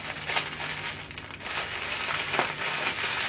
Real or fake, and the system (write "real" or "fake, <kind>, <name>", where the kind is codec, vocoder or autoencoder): real